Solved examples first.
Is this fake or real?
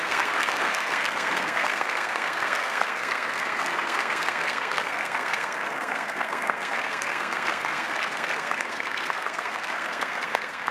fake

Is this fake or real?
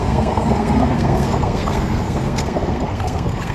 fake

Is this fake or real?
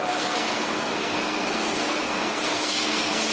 fake